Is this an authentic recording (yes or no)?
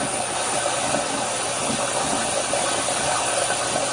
yes